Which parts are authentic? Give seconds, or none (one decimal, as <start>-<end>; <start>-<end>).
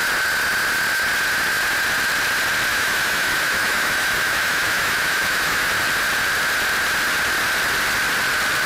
0.0-2.7; 5.7-8.7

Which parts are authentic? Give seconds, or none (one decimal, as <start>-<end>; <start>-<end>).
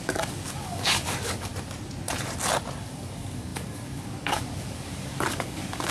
1.5-2.8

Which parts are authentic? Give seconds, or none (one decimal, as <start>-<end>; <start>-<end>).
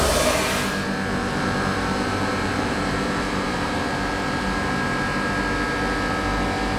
0.0-1.1; 3.8-6.8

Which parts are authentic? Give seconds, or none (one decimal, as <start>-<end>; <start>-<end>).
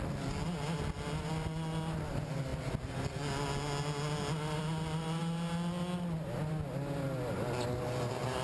0.0-8.4